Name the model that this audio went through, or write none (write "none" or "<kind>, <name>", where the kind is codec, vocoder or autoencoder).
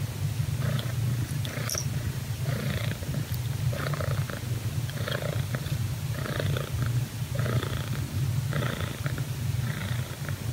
none